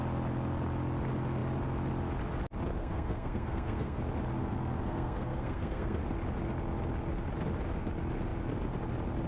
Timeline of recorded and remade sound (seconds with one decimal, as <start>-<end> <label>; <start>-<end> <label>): 0.0-2.8 recorded; 2.8-4.0 remade; 4.0-4.4 recorded; 4.4-6.0 remade; 6.0-9.3 recorded